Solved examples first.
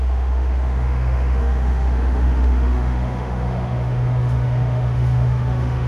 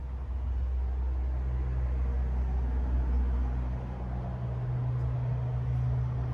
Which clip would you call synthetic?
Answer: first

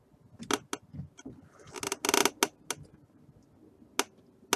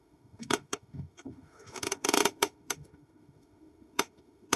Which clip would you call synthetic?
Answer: second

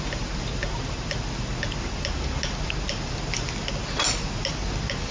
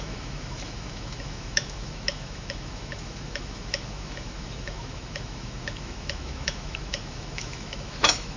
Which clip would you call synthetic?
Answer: second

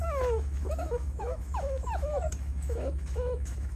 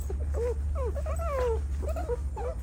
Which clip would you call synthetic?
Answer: first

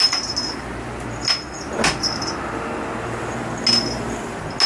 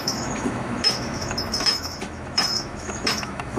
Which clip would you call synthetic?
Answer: second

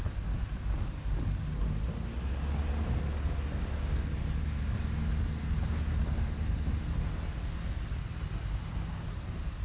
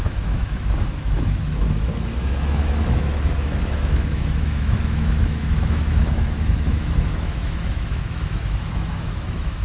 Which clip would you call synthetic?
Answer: second